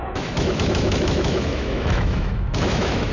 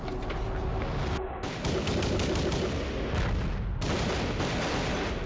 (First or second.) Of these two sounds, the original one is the second